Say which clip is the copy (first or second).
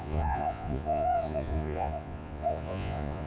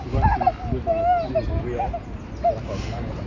first